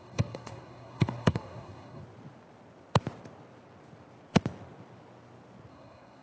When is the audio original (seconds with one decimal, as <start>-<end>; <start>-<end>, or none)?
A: 2.0-5.7